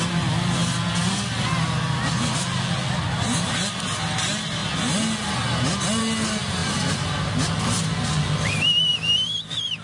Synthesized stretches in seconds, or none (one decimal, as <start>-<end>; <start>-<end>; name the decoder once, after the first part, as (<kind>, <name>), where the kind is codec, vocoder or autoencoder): 6.6-7.5 (vocoder, BigVGAN v2)